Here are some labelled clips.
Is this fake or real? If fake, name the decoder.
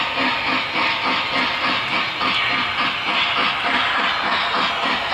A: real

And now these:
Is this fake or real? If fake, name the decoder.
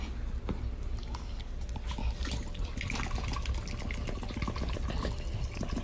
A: real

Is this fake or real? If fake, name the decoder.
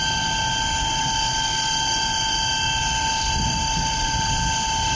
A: real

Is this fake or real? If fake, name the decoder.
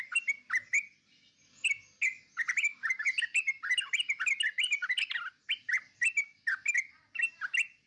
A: real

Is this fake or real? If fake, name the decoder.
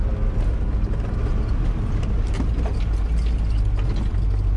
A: real